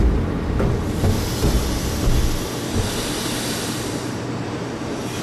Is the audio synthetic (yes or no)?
no